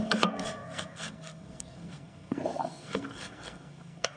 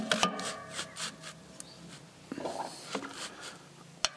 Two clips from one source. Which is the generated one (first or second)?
first